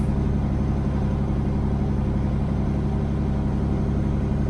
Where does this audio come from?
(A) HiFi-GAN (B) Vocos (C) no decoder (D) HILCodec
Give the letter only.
C